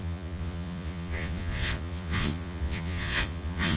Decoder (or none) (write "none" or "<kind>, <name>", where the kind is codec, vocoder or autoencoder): vocoder, Vocos